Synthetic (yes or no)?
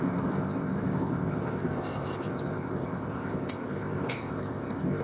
yes